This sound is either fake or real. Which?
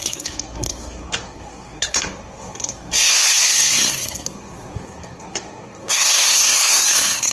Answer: fake